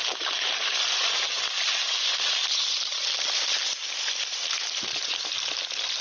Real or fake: fake